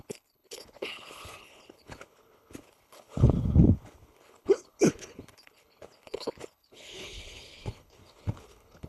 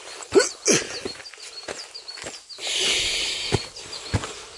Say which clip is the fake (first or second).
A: first